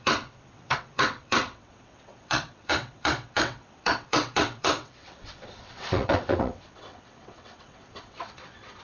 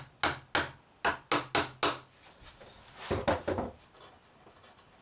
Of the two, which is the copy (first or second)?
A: first